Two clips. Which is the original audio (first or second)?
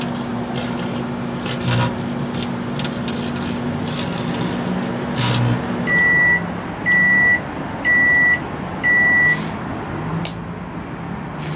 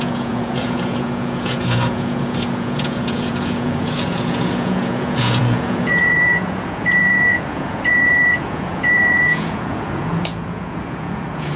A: first